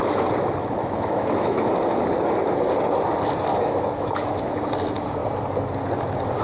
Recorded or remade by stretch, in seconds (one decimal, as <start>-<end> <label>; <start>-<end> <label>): 0.0-0.8 recorded; 0.8-1.7 remade; 1.7-3.5 recorded; 3.5-4.5 remade; 4.5-6.4 recorded